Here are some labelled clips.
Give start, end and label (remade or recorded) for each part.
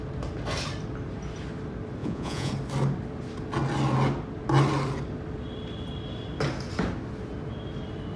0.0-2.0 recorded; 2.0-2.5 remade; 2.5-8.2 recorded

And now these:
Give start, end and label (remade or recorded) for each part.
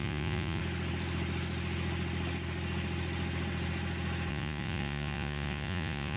0.0-0.6 remade; 0.6-4.3 recorded; 4.3-6.2 remade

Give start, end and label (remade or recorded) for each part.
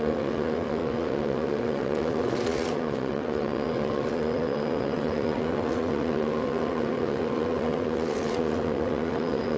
0.0-9.6 remade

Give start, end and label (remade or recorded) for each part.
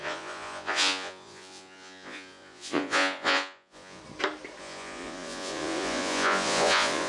0.0-4.0 remade; 4.0-4.6 recorded; 4.6-7.1 remade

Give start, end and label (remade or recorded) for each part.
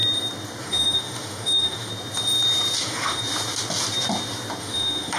0.0-0.6 recorded; 0.6-1.9 remade; 1.9-2.8 recorded; 2.8-3.2 remade; 3.2-4.6 recorded; 4.6-5.2 remade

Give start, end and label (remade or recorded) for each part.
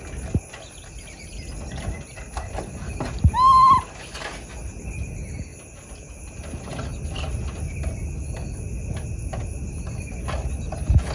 0.0-11.1 recorded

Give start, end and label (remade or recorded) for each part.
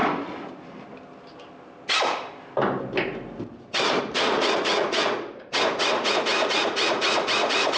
0.0-4.0 recorded; 4.0-7.8 remade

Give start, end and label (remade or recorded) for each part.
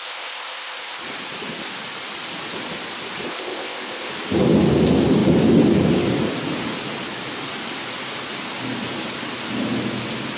0.0-1.0 remade; 1.0-3.3 recorded; 3.3-4.1 remade; 4.1-10.4 recorded